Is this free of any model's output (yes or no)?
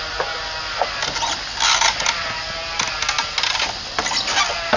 yes